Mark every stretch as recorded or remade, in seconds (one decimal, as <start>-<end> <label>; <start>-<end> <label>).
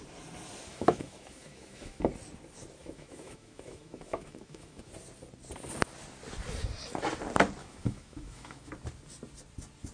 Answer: 0.0-0.7 recorded; 0.7-2.1 remade; 2.1-2.8 recorded; 2.8-4.9 remade; 4.9-7.6 recorded; 7.6-8.7 remade; 8.7-9.9 recorded